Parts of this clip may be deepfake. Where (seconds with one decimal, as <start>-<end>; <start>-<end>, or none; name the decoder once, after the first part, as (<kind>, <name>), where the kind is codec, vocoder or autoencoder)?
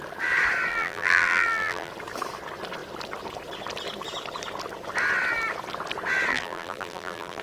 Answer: 0.7-1.9 (vocoder, BigVGAN v2); 6.3-7.4